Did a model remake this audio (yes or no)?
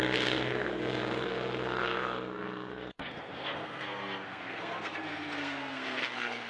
yes